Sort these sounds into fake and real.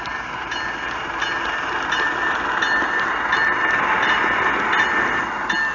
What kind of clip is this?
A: real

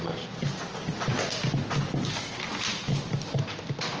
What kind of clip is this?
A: real